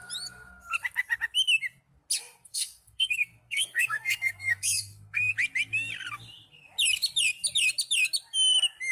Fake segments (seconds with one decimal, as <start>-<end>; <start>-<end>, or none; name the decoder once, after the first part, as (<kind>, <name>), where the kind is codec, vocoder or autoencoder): 2.2-5.3 (codec, SNAC)